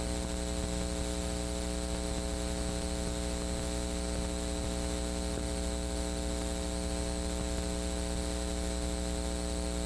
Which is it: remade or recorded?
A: recorded